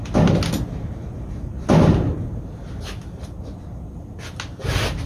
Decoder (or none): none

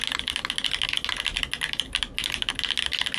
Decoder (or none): none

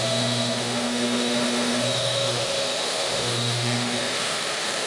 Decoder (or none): autoencoder, DAC-VAE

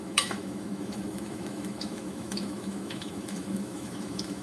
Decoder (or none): autoencoder, DAC-VAE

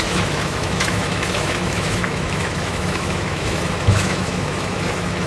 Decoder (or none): autoencoder, DAC-VAE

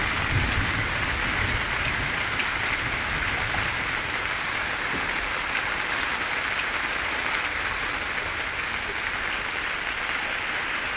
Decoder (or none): none